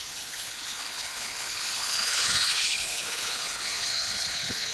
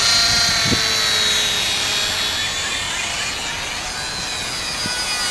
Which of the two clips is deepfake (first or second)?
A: first